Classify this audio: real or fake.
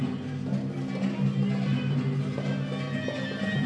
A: real